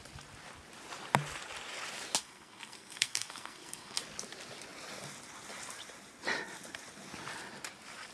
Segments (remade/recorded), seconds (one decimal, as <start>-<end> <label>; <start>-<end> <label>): 0.0-2.2 recorded; 2.2-4.0 remade; 4.0-8.1 recorded

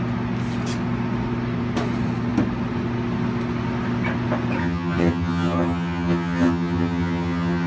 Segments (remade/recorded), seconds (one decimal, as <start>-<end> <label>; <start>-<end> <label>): 0.0-4.6 recorded; 4.6-7.7 remade

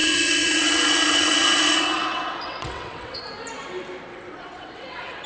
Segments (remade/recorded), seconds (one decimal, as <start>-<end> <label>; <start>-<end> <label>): 0.0-3.2 remade; 3.2-4.1 recorded; 4.1-5.3 remade

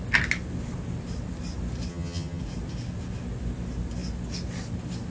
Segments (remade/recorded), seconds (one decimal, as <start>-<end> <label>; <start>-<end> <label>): 0.0-1.9 recorded; 1.9-2.4 remade; 2.4-5.1 recorded

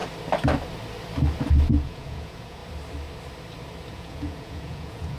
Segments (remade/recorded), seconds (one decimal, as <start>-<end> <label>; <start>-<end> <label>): 0.0-1.7 recorded; 1.7-2.6 remade; 2.6-3.9 recorded; 3.9-5.2 remade

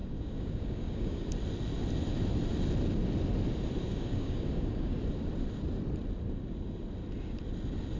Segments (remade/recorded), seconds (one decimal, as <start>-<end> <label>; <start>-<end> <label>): 0.0-1.3 remade; 1.3-3.9 recorded; 3.9-5.0 remade; 5.0-8.0 recorded